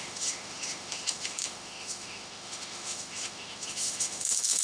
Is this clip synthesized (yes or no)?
yes